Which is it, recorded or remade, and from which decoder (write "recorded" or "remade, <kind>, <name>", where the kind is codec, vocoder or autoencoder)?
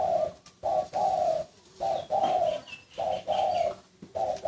recorded